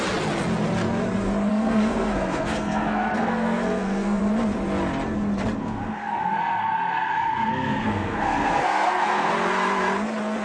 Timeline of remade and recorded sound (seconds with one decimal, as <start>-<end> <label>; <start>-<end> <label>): 0.0-1.5 recorded; 1.5-4.2 remade; 4.2-5.6 recorded; 5.6-9.3 remade; 9.3-10.4 recorded